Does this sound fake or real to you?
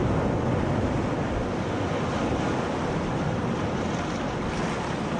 real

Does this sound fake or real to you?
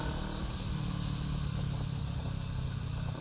real